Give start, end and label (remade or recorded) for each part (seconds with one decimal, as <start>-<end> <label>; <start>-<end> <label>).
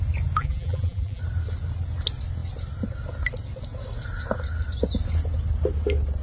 0.0-0.4 recorded; 0.4-1.2 remade; 1.2-6.2 recorded